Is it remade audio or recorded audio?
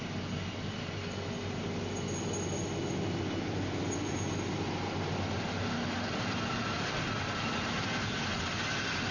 recorded